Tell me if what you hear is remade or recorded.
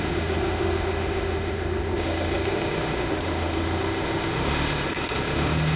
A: remade